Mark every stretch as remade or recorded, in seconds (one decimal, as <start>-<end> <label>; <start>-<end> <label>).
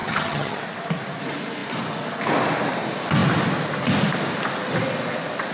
0.0-0.6 remade; 0.6-5.5 recorded